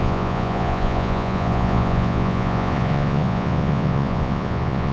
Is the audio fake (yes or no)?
yes